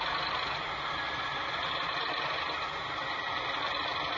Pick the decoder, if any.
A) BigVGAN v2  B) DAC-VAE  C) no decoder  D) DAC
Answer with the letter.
C